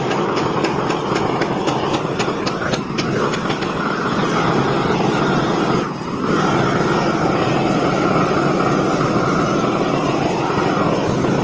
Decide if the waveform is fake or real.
real